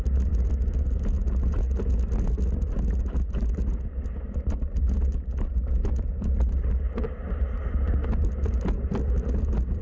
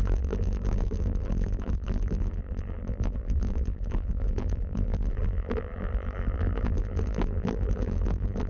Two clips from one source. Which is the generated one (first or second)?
second